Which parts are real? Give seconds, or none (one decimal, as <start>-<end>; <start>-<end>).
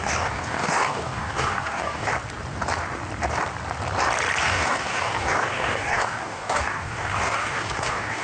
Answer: 2.1-4.4